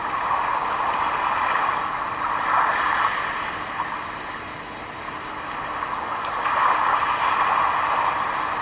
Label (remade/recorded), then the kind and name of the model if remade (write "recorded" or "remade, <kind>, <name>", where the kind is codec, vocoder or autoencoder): recorded